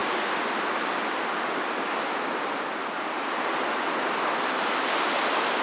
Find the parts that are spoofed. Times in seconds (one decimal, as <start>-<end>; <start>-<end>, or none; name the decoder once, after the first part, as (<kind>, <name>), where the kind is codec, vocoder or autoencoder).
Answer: none